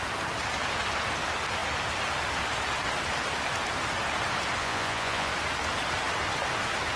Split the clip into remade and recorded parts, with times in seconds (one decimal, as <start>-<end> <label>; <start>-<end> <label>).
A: 0.0-4.6 recorded; 4.6-5.3 remade; 5.3-7.0 recorded